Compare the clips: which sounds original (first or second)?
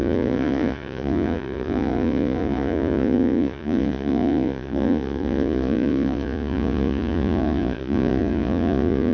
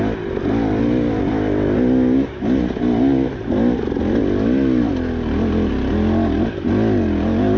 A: second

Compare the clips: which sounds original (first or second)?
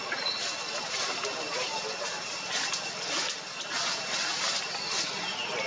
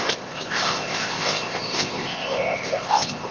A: first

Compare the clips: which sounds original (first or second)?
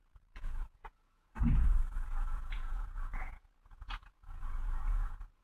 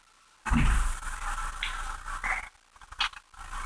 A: second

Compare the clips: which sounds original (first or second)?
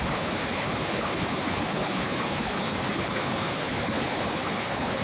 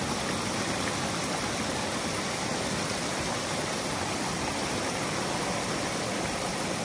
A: second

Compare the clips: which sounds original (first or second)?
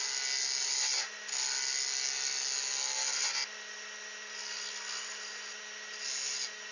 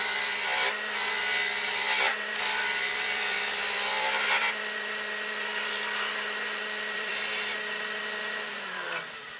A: first